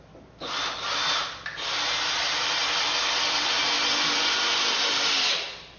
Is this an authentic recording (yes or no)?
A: yes